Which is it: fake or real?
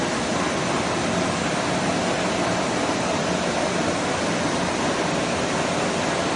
real